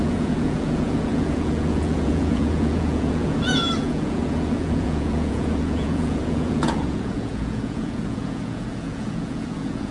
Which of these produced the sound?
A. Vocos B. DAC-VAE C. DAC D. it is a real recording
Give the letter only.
A